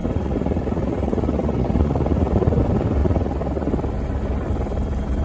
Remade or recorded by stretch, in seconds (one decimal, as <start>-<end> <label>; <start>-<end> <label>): 0.0-2.6 remade; 2.6-3.0 recorded; 3.0-3.7 remade; 3.7-5.2 recorded